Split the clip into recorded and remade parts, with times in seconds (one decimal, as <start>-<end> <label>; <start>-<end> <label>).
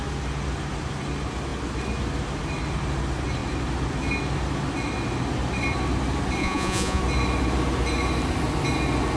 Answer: 0.0-6.4 recorded; 6.4-7.0 remade; 7.0-9.2 recorded